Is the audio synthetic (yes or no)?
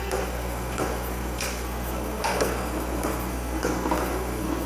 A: yes